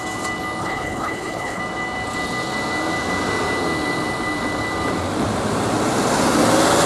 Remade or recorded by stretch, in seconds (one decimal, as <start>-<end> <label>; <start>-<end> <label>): 0.0-0.6 recorded; 0.6-1.6 remade; 1.6-6.9 recorded